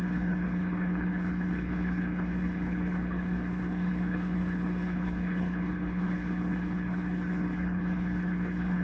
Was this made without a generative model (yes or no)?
no